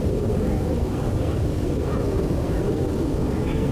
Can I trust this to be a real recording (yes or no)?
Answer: no